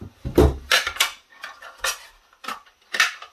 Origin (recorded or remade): recorded